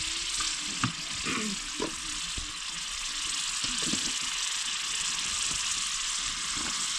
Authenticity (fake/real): real